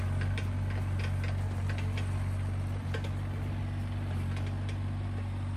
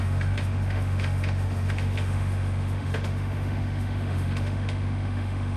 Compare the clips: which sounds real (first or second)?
first